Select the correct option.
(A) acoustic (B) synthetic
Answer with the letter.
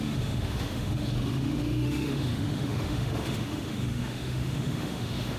B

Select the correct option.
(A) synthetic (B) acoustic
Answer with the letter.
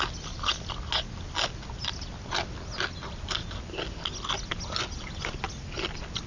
B